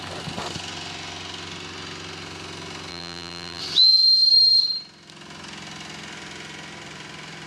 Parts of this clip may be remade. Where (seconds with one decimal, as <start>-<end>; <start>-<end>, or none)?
2.9-3.6